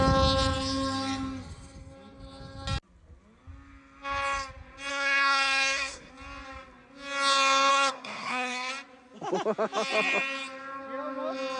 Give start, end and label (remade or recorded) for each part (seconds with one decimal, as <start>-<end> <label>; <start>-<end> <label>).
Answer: 0.0-4.9 recorded; 4.9-6.1 remade; 6.1-7.7 recorded; 7.7-8.7 remade; 8.7-11.6 recorded

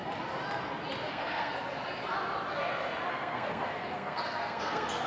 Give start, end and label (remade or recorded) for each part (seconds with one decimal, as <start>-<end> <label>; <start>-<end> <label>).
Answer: 0.0-1.1 recorded; 1.1-1.5 remade; 1.5-3.1 recorded; 3.1-5.1 remade